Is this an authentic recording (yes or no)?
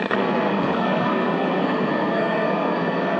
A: no